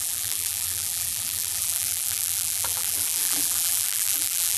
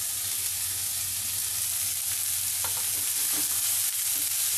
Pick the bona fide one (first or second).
second